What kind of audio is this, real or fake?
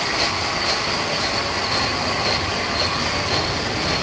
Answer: real